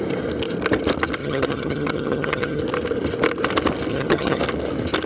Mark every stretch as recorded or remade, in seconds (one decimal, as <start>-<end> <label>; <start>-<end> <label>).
0.0-1.2 recorded; 1.2-2.6 remade; 2.6-3.9 recorded; 3.9-4.4 remade; 4.4-5.1 recorded